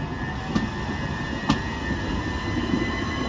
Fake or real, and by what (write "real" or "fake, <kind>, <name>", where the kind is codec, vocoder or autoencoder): real